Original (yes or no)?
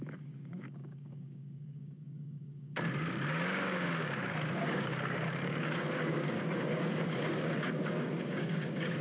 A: no